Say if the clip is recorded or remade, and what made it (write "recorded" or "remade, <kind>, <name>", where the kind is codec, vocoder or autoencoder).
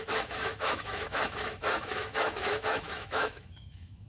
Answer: remade, autoencoder, DAC-VAE